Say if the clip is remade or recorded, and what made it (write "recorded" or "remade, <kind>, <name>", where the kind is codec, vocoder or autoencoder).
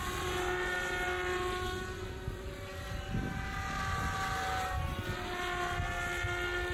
recorded